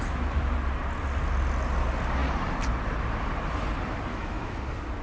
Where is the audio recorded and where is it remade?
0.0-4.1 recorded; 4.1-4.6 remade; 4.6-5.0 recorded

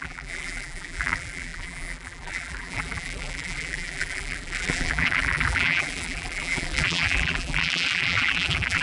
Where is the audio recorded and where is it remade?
0.0-8.8 remade